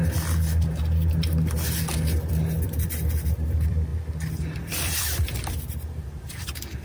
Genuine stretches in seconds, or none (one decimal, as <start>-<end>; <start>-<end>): 0.0-2.3; 3.9-4.6